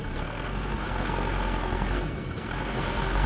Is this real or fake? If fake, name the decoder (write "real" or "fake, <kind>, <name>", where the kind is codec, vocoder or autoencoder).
fake, codec, SNAC